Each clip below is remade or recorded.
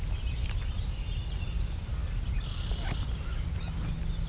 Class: recorded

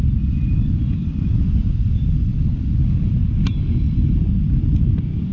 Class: remade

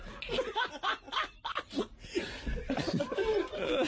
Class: recorded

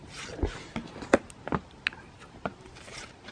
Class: recorded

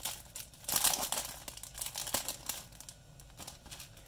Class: recorded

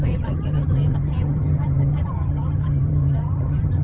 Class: remade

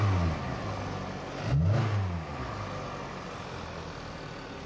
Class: recorded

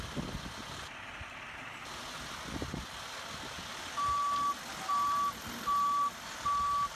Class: recorded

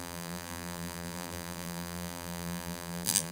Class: remade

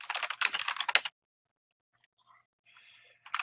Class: recorded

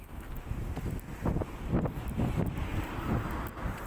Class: recorded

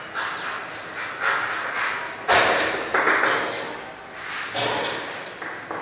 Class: recorded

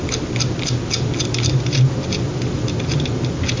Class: recorded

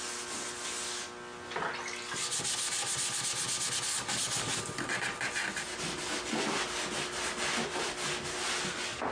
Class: recorded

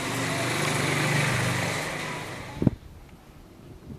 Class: recorded